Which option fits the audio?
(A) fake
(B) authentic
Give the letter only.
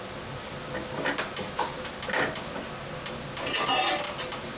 B